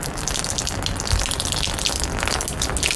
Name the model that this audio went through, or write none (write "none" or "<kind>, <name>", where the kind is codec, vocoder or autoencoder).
none